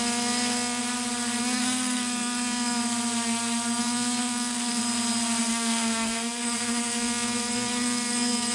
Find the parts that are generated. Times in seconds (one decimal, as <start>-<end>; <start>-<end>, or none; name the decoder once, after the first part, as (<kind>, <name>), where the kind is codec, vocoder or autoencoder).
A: 0.0-0.8 (codec, SNAC); 1.4-2.8; 3.8-4.8; 5.4-8.5